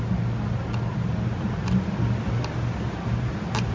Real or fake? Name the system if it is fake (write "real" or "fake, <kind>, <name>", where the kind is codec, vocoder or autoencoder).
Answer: real